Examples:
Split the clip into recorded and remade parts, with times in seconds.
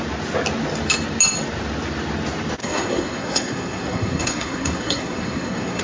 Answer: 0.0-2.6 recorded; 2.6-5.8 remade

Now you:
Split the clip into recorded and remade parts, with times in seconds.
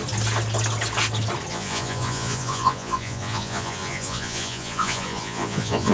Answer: 0.0-1.5 recorded; 1.5-5.9 remade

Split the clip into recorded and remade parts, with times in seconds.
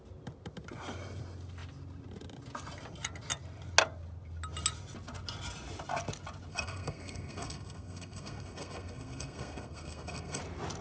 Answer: 0.0-6.5 recorded; 6.5-10.4 remade; 10.4-10.8 recorded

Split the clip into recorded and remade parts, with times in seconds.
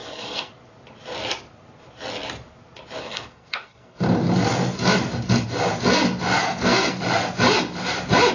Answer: 0.0-0.5 remade; 0.5-3.0 recorded; 3.0-4.0 remade; 4.0-6.4 recorded; 6.4-7.0 remade; 7.0-8.3 recorded